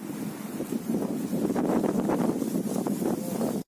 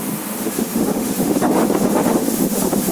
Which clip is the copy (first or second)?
second